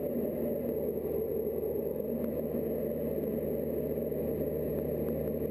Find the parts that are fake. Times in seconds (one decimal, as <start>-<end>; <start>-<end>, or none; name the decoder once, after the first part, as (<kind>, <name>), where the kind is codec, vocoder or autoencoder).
none